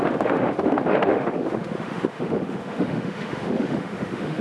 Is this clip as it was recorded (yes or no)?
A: no